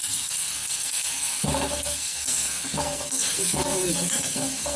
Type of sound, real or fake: fake